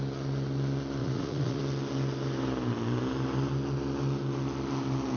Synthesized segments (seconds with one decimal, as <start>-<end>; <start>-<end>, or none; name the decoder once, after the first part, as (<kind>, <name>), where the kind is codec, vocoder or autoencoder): 1.0-1.6 (vocoder, Vocos)